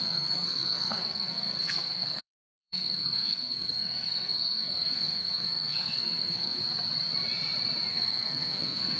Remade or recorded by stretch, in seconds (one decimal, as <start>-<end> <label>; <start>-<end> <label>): 0.0-6.6 remade; 6.6-7.9 recorded; 7.9-9.0 remade